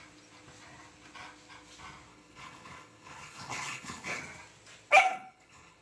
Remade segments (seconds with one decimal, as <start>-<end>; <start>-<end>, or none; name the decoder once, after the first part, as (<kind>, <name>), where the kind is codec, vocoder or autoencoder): 2.1-4.2 (codec, HILCodec); 4.9-5.8